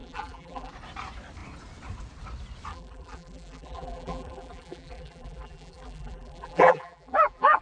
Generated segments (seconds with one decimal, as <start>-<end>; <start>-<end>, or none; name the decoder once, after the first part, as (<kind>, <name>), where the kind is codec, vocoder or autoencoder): 0.0-0.7 (vocoder, BigVGAN v2); 2.7-7.6